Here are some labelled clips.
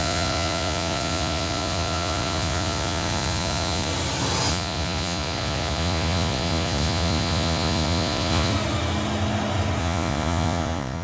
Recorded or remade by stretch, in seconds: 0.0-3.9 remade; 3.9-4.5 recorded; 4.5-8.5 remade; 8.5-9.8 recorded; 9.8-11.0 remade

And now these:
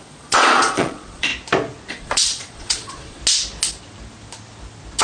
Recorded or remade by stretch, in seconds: 0.0-1.3 remade; 1.3-1.9 recorded; 1.9-3.2 remade; 3.2-5.0 recorded

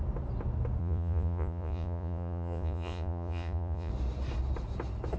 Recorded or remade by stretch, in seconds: 0.0-0.8 recorded; 0.8-3.9 remade; 3.9-5.2 recorded